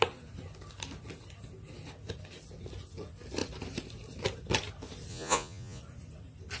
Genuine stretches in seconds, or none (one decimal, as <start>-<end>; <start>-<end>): 0.0-5.1; 5.8-6.6